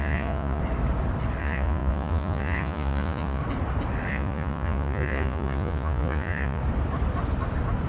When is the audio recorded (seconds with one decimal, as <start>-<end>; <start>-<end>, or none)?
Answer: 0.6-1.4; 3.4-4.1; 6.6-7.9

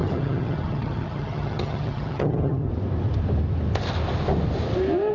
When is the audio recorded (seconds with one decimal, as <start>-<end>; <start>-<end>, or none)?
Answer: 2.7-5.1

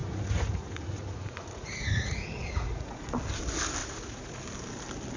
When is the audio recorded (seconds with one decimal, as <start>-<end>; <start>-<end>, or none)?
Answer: 3.1-3.8; 4.4-5.2

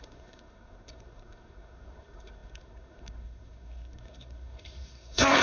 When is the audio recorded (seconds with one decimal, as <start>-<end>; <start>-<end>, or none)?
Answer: none

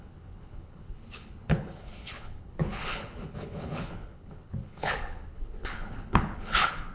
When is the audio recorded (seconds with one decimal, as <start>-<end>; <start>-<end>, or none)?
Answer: none